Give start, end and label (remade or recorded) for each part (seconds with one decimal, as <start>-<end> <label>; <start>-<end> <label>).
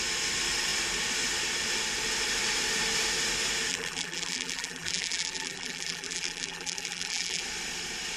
0.0-3.7 recorded; 3.7-7.4 remade; 7.4-8.2 recorded